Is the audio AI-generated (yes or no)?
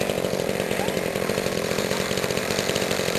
yes